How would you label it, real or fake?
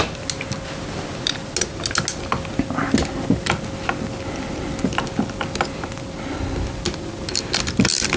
real